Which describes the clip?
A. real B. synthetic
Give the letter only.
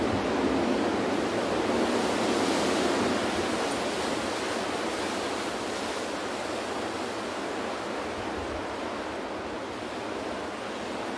A